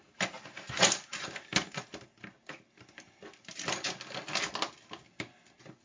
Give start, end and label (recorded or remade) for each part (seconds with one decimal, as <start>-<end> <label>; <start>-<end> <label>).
0.0-5.8 recorded